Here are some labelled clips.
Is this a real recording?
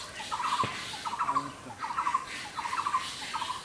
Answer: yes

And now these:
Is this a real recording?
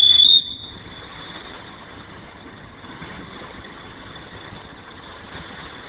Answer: no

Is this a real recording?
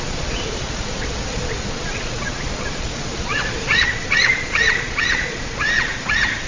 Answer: no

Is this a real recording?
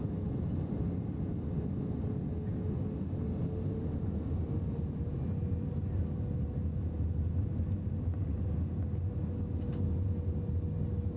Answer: yes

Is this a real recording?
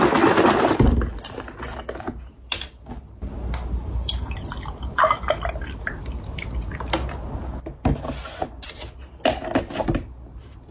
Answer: yes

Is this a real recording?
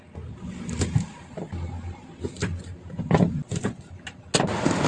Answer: yes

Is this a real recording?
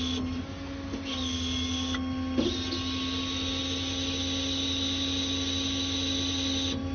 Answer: yes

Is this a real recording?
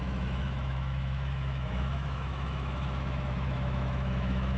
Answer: no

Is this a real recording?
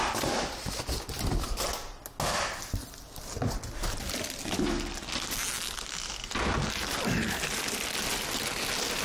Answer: yes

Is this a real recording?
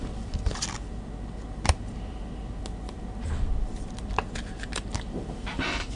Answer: yes